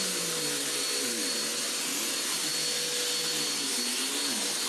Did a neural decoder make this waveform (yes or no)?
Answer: no